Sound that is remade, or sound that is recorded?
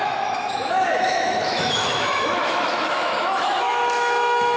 remade